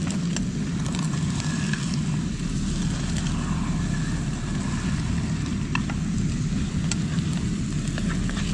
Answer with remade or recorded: recorded